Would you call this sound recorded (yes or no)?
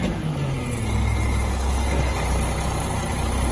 yes